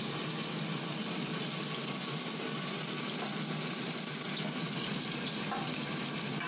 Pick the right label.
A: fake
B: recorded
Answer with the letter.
B